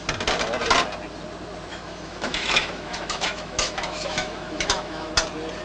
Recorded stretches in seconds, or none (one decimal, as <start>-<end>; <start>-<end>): 0.0-1.7; 5.1-5.6